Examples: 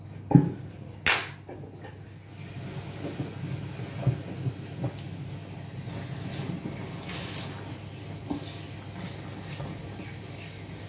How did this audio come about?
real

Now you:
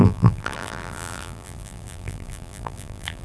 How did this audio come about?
fake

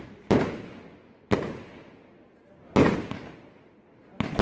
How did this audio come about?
real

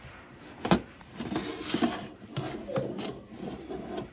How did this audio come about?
real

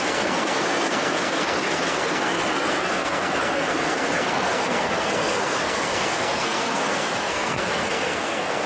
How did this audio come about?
fake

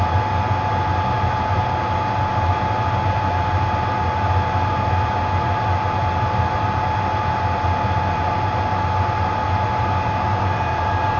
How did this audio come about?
real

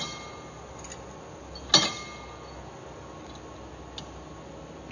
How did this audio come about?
real